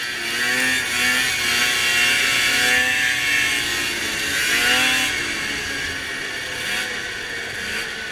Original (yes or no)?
yes